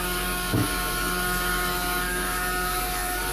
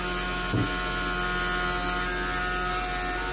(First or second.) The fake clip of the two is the first